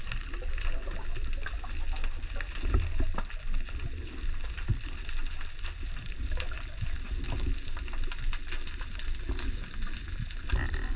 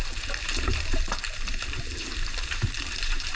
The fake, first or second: second